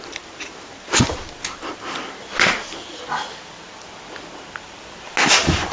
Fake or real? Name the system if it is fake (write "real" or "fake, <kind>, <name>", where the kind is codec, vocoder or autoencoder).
real